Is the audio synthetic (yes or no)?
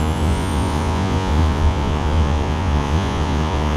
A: yes